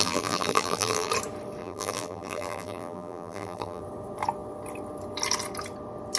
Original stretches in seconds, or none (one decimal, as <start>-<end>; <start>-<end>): 1.1-1.6; 3.8-6.2

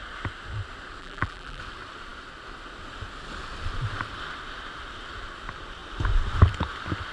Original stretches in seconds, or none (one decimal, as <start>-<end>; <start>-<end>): 0.0-1.0; 1.6-7.1

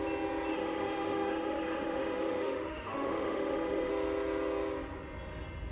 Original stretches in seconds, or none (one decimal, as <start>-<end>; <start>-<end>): 0.0-0.5; 3.9-5.7

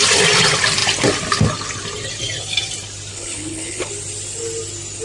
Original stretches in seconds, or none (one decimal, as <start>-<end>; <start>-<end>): 0.0-3.1; 3.9-5.0

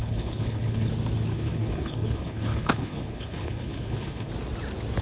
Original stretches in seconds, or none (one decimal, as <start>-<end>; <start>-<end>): 0.9-1.3; 4.3-5.0

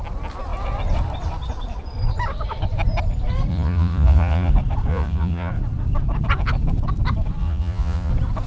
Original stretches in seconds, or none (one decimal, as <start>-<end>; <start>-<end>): 0.0-3.5; 4.5-4.9; 5.5-7.4; 8.1-8.5

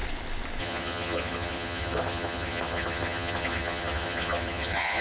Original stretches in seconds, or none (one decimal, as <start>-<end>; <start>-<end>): 0.0-0.6

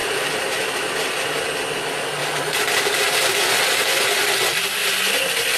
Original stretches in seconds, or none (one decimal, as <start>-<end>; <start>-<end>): 1.4-2.2; 3.0-4.8